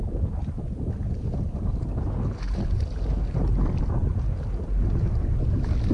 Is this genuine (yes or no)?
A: yes